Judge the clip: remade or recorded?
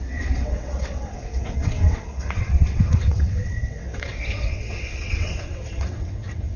remade